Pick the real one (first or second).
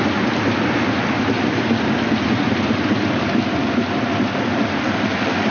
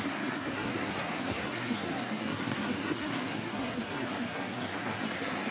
first